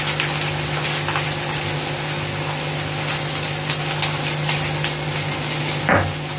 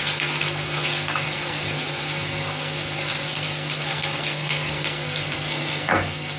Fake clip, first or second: second